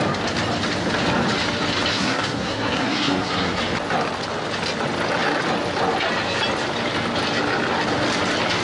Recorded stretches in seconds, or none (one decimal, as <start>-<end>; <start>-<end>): 0.0-1.9; 3.6-8.6